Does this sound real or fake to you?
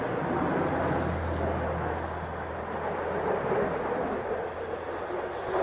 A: real